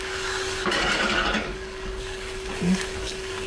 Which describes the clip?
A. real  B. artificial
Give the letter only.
B